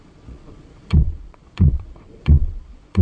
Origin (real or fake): fake